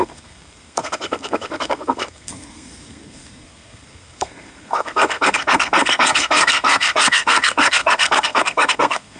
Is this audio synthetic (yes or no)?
yes